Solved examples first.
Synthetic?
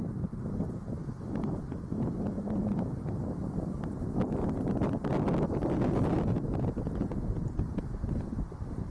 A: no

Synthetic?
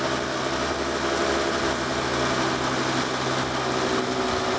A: no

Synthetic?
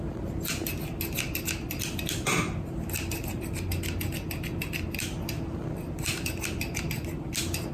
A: no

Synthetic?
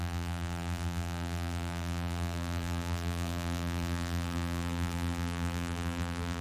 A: yes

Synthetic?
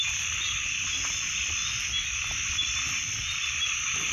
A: no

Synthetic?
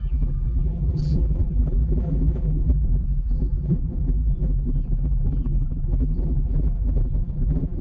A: yes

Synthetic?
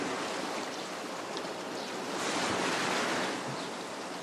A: no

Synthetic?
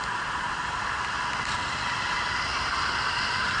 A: no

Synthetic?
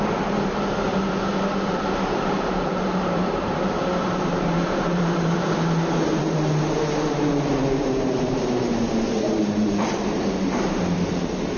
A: yes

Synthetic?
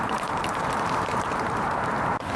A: yes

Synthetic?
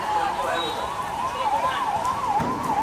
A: yes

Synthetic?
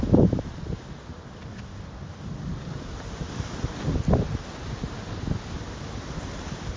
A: no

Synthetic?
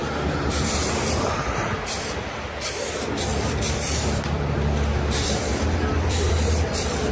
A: yes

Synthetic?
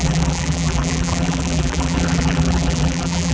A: yes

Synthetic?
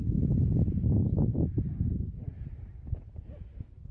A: yes